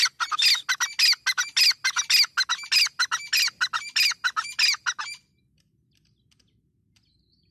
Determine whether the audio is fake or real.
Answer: real